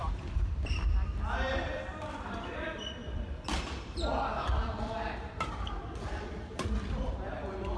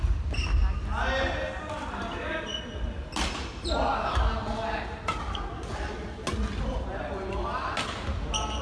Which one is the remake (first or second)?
first